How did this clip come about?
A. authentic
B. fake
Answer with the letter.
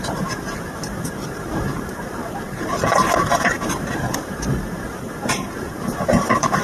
B